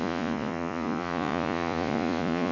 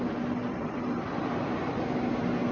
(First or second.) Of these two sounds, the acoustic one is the second